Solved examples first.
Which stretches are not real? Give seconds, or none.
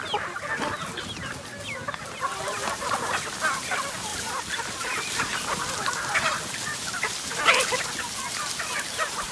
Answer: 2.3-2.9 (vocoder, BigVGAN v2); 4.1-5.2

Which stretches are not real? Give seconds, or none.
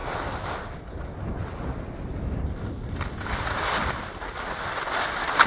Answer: none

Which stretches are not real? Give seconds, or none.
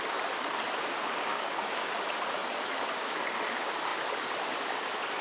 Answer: 1.3-1.9 (codec, DAC)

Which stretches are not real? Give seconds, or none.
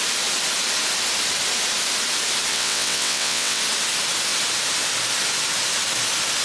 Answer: 2.5-3.6 (vocoder, WaveNeXt)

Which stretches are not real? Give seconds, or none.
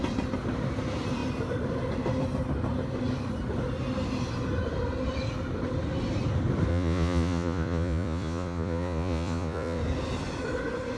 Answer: 6.7-9.8 (vocoder, Vocos)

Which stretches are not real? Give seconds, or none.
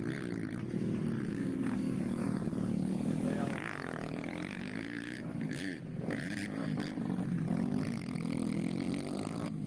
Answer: 1.3-5.8 (codec, DAC)